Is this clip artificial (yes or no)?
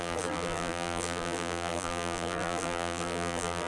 yes